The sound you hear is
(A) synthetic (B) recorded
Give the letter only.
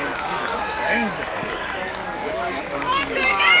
A